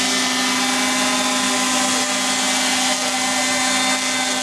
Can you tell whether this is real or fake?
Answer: real